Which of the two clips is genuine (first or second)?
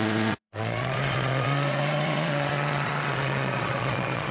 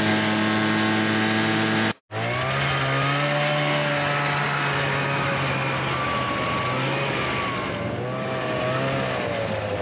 second